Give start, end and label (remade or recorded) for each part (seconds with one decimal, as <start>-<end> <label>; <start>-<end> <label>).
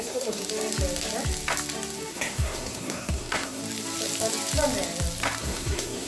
0.0-0.4 remade; 0.4-2.1 recorded; 2.1-3.6 remade; 3.6-5.4 recorded; 5.4-6.1 remade